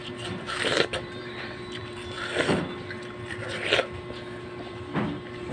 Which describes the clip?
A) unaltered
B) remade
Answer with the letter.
B